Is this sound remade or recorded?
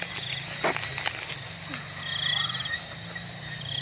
recorded